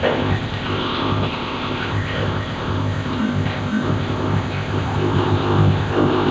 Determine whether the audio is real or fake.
fake